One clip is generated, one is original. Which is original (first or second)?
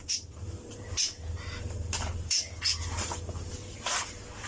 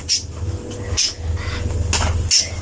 second